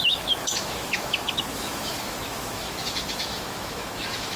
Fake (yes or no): yes